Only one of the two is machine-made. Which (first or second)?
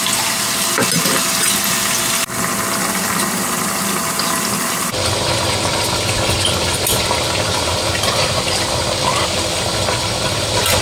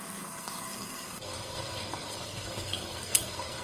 second